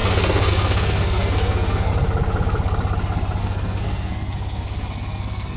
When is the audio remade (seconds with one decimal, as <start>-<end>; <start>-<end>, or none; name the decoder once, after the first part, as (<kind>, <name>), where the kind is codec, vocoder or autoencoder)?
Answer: 0.0-1.9 (codec, SNAC); 3.4-5.6